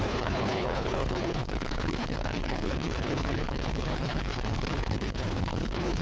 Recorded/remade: remade